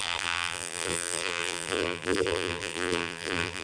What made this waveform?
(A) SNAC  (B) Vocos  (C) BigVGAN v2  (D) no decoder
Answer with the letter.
C